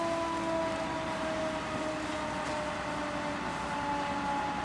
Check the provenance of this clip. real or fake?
real